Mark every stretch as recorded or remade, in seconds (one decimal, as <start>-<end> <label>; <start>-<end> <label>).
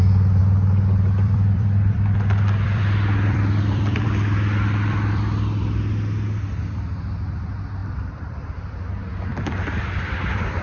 0.0-0.4 recorded; 0.4-5.2 remade; 5.2-7.8 recorded; 7.8-8.8 remade; 8.8-10.6 recorded